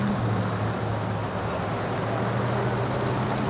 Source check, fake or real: real